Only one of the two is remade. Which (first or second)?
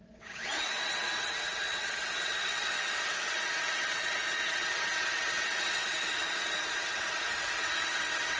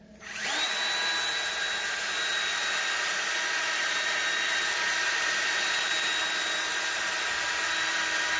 first